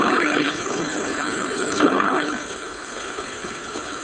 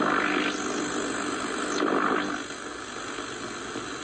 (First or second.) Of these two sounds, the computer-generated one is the first